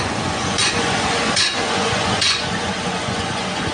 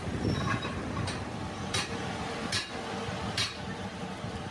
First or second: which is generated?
first